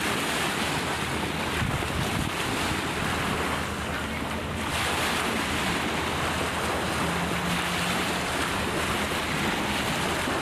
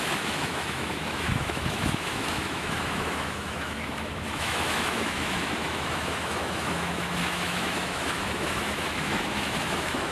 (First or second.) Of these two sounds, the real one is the first